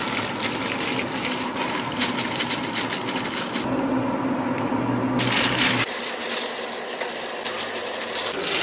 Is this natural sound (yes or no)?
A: yes